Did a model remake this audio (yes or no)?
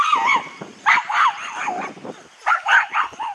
yes